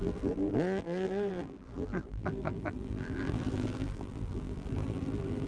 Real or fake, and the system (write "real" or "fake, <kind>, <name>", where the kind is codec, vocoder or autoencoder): fake, vocoder, BigVGAN v2